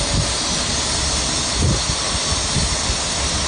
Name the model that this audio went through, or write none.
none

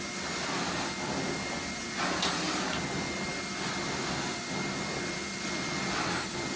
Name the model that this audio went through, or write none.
none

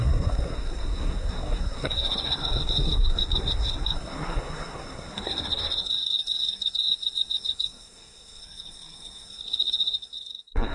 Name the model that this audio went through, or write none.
codec, SNAC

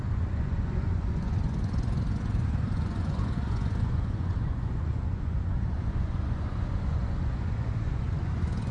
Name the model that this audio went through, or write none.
vocoder, Vocos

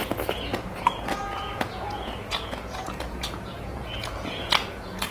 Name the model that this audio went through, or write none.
vocoder, Vocos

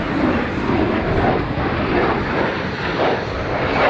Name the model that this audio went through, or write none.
none